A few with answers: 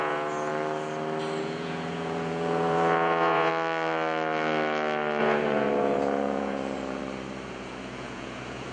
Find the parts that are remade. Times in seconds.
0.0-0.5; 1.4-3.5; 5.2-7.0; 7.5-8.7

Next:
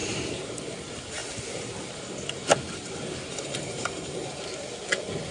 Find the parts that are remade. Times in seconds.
3.3-4.3

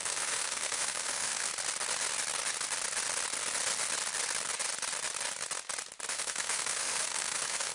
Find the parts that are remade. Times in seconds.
0.0-1.5; 6.1-7.7

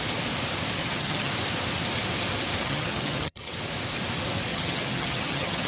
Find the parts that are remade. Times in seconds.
0.8-1.3; 2.6-3.5; 4.5-5.7

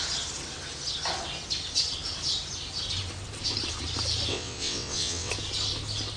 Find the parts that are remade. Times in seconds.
4.3-5.3

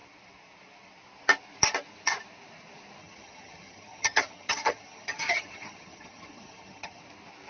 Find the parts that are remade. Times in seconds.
3.0-7.0

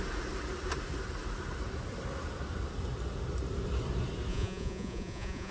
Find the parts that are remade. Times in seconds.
4.3-5.5